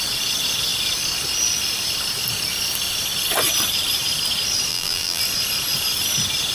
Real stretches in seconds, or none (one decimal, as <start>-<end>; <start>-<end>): 0.0-4.7; 5.2-6.5